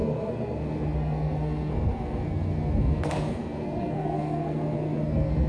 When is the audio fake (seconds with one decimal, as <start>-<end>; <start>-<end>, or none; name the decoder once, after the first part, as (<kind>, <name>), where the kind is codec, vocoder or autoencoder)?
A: 0.0-5.5 (codec, SNAC)